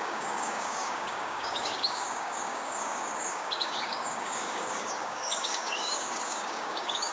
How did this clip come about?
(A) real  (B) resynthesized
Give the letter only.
B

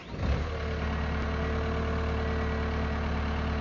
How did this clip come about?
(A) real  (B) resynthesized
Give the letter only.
A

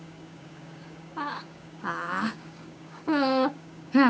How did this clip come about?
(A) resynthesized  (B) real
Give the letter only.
A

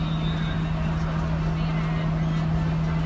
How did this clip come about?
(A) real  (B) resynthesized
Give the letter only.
A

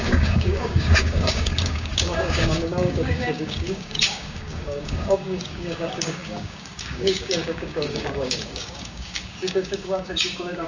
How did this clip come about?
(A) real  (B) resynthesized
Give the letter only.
B